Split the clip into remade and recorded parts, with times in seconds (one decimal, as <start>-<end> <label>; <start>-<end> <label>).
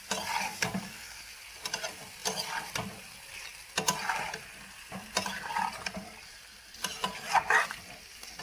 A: 0.0-0.5 recorded; 0.5-1.3 remade; 1.3-8.4 recorded